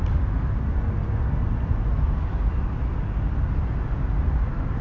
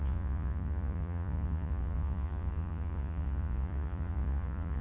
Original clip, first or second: first